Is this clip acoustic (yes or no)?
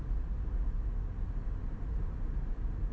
yes